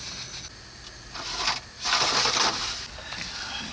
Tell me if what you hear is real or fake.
real